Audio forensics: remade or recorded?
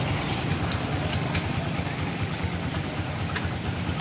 recorded